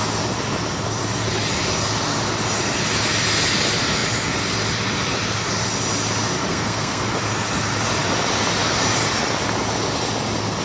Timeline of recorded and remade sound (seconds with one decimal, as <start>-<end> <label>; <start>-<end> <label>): 0.0-6.5 recorded; 6.5-7.1 remade; 7.1-10.6 recorded